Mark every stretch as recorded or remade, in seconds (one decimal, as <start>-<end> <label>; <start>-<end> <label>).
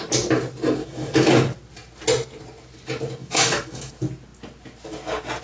0.0-0.8 recorded; 0.8-1.3 remade; 1.3-3.2 recorded; 3.2-3.9 remade; 3.9-5.4 recorded